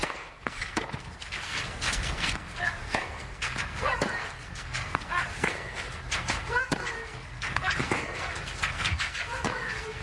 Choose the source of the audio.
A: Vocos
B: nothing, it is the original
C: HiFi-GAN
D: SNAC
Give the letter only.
D